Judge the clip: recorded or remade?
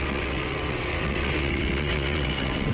remade